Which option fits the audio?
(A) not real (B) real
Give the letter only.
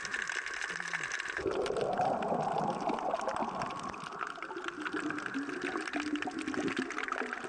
B